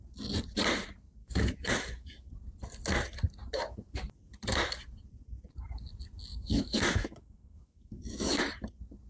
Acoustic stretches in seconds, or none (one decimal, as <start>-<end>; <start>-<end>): 0.0-1.2; 2.3-6.3; 8.4-9.1